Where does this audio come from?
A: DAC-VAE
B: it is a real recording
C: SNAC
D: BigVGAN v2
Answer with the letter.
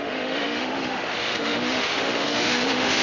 A